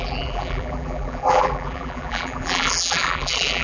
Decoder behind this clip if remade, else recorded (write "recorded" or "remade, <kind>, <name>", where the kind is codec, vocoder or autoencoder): remade, vocoder, BigVGAN v2